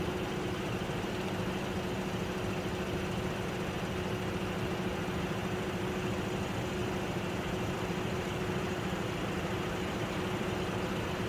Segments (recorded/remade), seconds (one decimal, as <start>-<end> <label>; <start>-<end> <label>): 0.0-6.8 recorded; 6.8-10.6 remade; 10.6-11.3 recorded